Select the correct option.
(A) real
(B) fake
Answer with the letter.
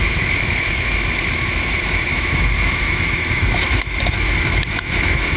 B